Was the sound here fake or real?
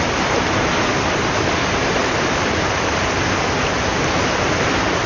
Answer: real